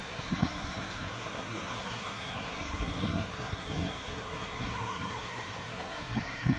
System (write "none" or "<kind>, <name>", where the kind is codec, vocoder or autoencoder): codec, SNAC